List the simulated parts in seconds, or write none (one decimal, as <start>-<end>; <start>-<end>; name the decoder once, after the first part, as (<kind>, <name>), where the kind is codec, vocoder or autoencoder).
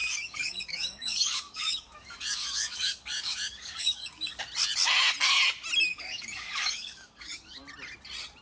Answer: 0.0-4.4 (codec, DAC); 5.9-7.6